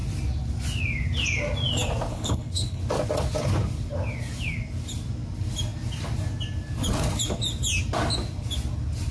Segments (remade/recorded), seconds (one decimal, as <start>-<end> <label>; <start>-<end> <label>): 0.0-2.1 recorded; 2.1-2.8 remade; 2.8-9.1 recorded